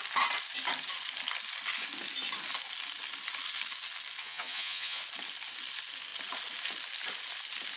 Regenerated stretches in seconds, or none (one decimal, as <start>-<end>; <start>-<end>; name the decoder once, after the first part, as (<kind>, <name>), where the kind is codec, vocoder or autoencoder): 4.2-5.0 (vocoder, Vocos)